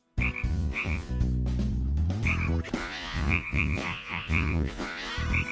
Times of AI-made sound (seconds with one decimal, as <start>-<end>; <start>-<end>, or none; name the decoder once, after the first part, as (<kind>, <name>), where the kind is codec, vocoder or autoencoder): 0.5-1.1 (vocoder, Vocos); 2.8-5.1